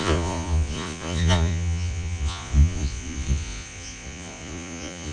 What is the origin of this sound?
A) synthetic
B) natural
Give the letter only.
A